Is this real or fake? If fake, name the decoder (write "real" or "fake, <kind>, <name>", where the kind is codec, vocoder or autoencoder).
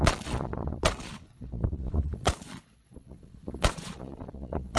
fake, vocoder, Vocos